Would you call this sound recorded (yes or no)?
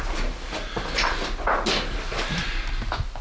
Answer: yes